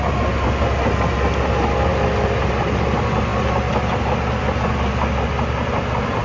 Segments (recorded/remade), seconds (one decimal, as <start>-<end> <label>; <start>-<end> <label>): 0.0-6.2 recorded

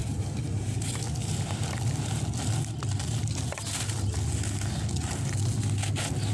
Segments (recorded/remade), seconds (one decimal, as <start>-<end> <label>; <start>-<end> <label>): 0.0-6.3 recorded

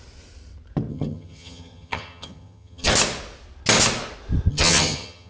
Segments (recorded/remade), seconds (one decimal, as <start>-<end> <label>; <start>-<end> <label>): 0.0-0.9 recorded; 0.9-2.9 remade; 2.9-4.5 recorded; 4.5-5.3 remade